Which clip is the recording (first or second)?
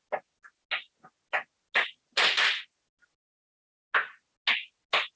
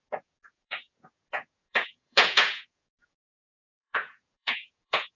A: first